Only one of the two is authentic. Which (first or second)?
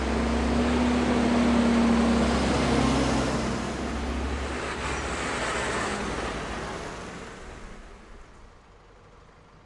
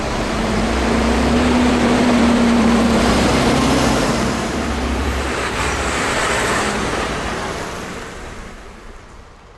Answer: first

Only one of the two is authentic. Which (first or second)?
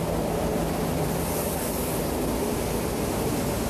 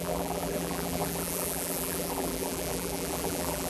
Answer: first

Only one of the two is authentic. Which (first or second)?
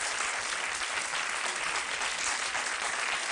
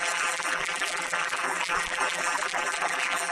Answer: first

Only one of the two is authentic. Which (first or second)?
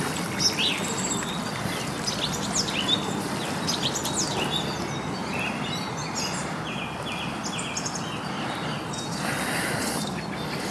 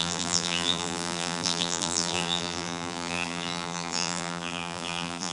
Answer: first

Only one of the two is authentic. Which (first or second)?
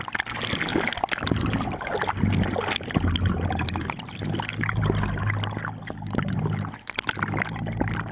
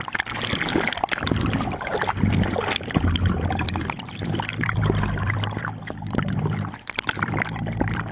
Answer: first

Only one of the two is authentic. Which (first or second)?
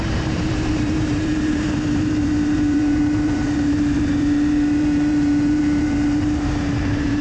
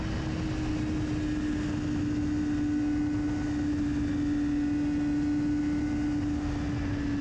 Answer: second